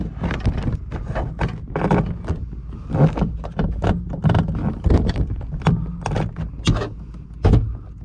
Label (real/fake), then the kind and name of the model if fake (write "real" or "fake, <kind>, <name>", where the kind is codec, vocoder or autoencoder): real